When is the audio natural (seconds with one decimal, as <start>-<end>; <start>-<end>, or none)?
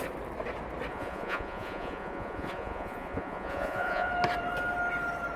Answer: 0.0-0.9; 4.1-5.4